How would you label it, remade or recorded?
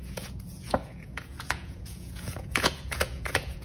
remade